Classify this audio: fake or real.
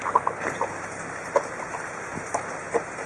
real